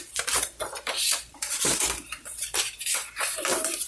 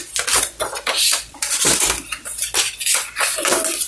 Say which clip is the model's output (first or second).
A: first